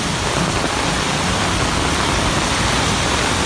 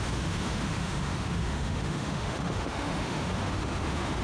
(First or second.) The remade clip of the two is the second